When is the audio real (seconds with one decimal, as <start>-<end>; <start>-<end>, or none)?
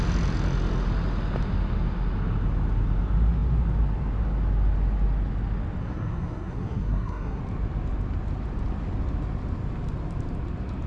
0.0-5.8; 7.4-10.9